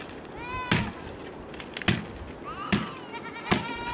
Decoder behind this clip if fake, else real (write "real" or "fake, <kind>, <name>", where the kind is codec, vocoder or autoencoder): real